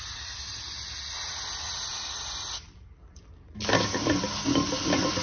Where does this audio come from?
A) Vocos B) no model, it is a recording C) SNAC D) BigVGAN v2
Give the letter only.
B